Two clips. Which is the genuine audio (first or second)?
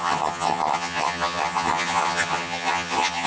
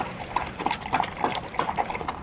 second